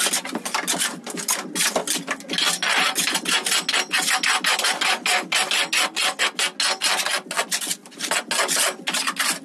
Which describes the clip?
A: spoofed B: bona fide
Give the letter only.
B